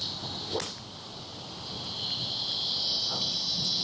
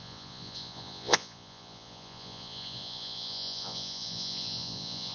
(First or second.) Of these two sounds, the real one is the first